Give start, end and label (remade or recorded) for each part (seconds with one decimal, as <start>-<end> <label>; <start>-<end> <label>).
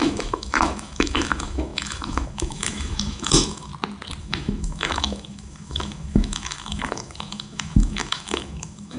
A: 0.0-3.7 remade; 3.7-4.2 recorded; 4.2-9.0 remade